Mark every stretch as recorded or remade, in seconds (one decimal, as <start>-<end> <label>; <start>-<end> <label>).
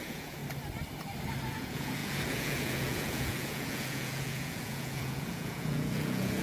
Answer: 0.0-0.4 remade; 0.4-1.5 recorded; 1.5-6.4 remade